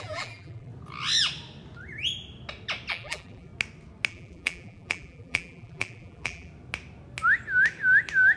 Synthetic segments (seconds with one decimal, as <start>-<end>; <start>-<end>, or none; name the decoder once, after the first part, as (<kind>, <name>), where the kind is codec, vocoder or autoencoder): 0.0-0.7 (vocoder, BigVGAN v2); 2.9-3.5; 4.1-6.5